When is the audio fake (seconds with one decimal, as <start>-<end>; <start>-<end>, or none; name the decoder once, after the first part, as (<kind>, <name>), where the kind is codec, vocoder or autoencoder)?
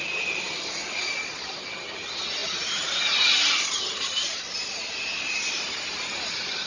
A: 2.4-5.5 (vocoder, BigVGAN v2)